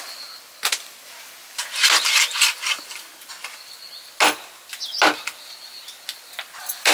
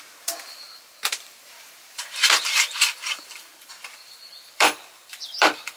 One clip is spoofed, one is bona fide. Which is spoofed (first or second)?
second